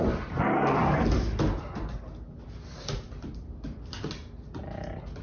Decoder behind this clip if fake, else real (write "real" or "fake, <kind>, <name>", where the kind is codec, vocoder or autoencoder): real